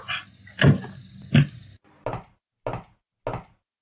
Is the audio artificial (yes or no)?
no